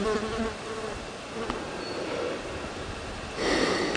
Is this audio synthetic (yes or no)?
no